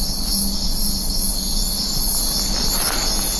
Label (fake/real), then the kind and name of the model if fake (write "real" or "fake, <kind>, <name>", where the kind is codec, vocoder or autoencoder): real